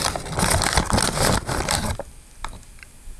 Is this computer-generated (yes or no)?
no